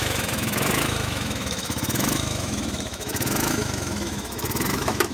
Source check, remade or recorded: remade